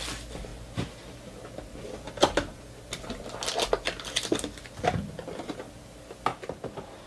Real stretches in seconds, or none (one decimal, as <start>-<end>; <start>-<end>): 0.0-7.1